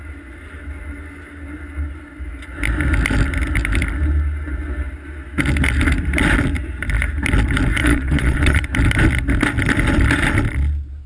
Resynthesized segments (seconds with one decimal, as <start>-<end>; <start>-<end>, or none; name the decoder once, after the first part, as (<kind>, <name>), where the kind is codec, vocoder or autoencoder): 7.8-8.6 (vocoder, Vocos)